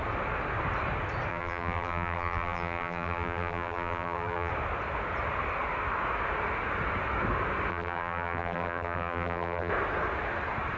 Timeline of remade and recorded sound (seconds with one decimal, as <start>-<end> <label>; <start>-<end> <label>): 0.0-1.3 recorded; 1.3-4.5 remade; 4.5-7.7 recorded; 7.7-9.7 remade; 9.7-10.8 recorded